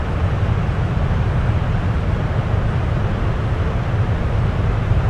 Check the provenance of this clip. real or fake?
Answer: real